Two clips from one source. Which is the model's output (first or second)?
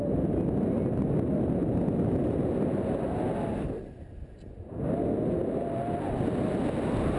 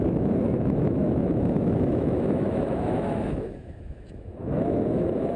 second